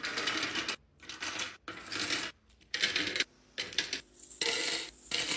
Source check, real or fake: real